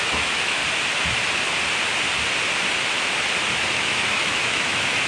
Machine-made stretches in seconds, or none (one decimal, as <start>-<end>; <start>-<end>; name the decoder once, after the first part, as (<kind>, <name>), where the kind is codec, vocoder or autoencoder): 0.0-0.6 (autoencoder, DAC-VAE); 3.7-5.1